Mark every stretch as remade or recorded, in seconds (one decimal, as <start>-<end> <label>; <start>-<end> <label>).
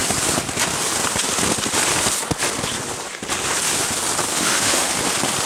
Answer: 0.0-4.3 recorded; 4.3-4.9 remade; 4.9-5.5 recorded